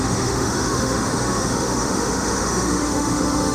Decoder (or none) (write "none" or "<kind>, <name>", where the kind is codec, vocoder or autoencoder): autoencoder, DAC-VAE